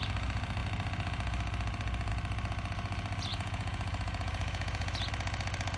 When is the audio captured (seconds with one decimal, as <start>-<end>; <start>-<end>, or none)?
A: 0.0-3.3; 5.1-5.8